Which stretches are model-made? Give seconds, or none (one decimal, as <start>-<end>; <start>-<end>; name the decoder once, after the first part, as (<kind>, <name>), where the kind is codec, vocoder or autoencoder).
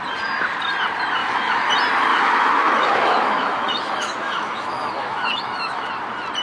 1.2-1.7 (autoencoder, DAC-VAE); 2.1-5.9